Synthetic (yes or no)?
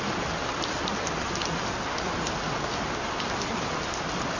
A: no